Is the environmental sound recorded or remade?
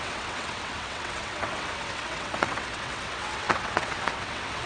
remade